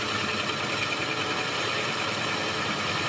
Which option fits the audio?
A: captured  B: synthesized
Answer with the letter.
A